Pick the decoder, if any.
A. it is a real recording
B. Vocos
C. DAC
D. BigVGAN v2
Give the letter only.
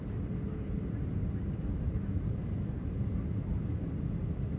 A